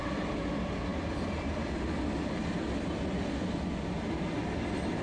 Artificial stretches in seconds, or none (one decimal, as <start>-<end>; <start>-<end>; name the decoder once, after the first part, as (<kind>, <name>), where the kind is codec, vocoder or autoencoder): none